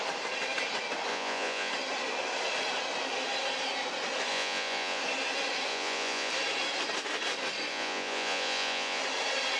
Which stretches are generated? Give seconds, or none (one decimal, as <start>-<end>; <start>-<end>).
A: 1.1-1.7; 4.3-5.0; 5.7-6.3; 7.7-9.0